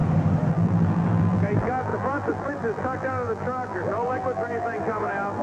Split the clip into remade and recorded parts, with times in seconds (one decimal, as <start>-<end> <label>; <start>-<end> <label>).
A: 0.0-0.5 recorded; 0.5-5.4 remade